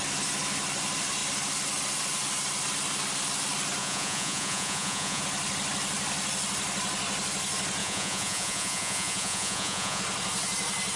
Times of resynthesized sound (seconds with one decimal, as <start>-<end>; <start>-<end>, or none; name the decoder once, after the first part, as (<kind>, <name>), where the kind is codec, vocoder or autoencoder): 3.8-5.2 (vocoder, Vocos); 7.8-10.0